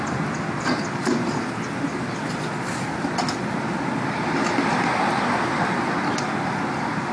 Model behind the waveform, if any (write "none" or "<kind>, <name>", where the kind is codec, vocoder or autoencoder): none